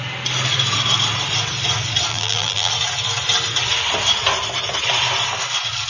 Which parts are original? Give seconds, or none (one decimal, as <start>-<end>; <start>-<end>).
0.0-2.1; 2.7-5.9